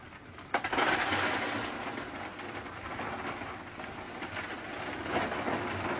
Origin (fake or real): real